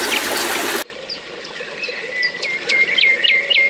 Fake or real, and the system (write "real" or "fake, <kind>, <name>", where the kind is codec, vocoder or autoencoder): real